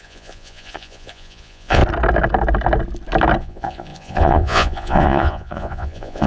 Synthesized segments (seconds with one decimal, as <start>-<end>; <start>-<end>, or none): 0.0-1.8; 3.4-6.3